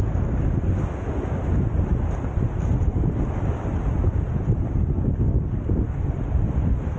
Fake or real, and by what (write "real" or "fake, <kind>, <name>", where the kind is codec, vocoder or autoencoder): real